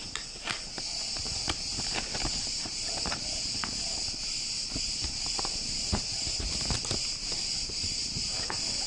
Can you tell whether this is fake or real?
fake